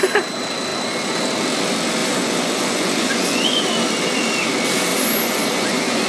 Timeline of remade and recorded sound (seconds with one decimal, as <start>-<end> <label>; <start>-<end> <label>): 0.0-2.0 recorded; 2.0-3.6 remade; 3.6-4.9 recorded; 4.9-6.1 remade